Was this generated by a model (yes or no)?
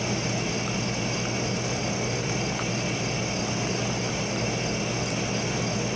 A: no